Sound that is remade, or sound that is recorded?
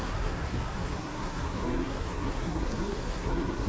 remade